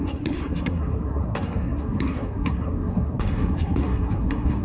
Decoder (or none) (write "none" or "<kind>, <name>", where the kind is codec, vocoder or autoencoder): codec, SNAC